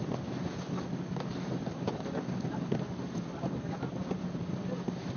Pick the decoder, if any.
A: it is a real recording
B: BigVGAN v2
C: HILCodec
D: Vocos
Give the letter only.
A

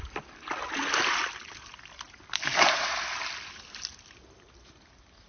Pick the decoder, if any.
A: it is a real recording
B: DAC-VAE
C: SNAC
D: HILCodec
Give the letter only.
A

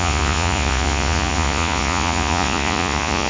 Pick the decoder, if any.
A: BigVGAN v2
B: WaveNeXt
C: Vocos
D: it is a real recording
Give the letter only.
C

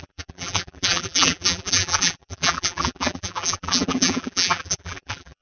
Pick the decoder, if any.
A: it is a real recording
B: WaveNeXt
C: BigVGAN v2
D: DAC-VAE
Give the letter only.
C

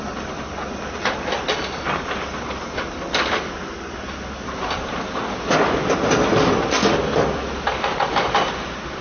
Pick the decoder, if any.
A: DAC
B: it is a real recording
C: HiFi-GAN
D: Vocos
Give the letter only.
B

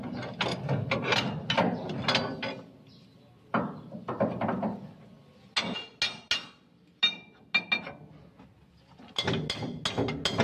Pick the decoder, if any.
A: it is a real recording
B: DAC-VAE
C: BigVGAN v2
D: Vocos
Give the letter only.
A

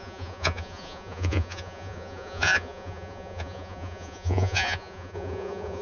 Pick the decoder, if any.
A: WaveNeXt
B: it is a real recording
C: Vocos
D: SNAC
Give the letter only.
C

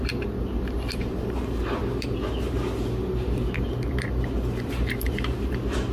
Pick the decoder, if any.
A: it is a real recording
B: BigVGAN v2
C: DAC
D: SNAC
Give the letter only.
B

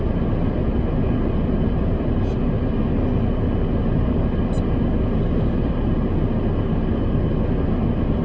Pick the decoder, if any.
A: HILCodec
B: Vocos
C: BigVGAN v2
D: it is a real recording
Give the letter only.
D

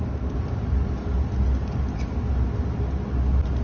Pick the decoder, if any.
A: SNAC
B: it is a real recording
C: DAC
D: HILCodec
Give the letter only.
B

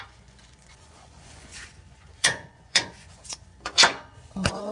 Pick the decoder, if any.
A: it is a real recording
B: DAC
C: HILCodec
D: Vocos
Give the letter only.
D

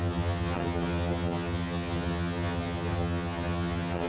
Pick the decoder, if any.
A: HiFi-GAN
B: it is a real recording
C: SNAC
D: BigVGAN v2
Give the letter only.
A